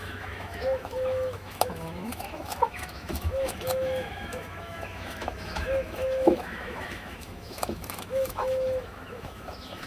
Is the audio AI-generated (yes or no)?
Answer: yes